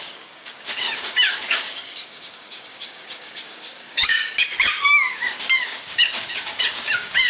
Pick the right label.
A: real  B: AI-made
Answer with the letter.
B